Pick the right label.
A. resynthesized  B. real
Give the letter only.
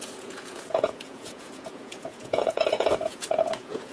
A